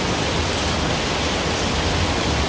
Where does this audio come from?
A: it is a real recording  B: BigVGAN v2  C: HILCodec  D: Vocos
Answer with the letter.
A